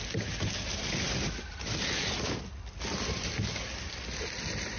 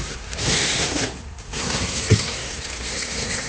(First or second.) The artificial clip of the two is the second